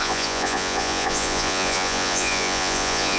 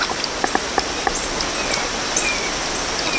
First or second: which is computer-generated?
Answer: first